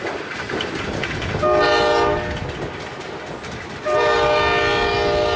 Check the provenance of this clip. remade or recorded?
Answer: recorded